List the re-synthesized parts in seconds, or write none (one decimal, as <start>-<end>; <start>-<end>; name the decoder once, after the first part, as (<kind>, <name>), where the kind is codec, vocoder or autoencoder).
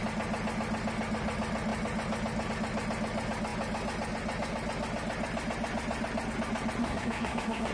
6.8-7.7 (codec, SNAC)